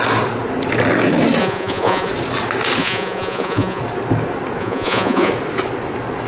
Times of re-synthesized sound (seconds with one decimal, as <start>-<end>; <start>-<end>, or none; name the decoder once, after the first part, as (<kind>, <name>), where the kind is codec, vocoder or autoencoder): 1.4-2.1 (vocoder, Vocos); 2.8-3.8; 4.6-5.3